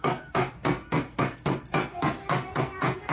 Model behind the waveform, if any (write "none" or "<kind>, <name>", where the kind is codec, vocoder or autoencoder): codec, SNAC